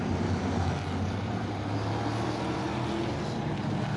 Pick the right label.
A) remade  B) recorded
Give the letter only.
B